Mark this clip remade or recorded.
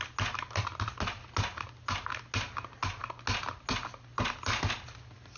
recorded